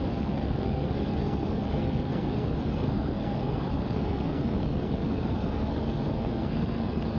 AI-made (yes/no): yes